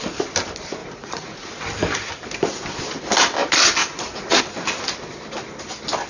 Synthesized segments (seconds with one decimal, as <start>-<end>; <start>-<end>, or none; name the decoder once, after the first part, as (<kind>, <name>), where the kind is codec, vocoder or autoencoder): 0.8-1.5 (vocoder, Vocos); 3.8-4.4